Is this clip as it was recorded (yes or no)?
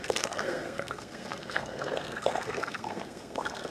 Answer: no